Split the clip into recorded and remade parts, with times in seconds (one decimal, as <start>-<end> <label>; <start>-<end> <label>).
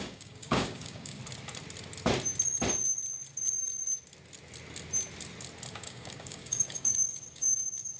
0.0-1.2 remade; 1.2-5.7 recorded; 5.7-8.0 remade